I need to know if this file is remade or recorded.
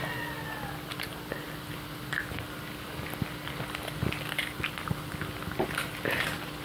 recorded